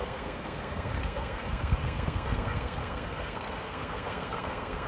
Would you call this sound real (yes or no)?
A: no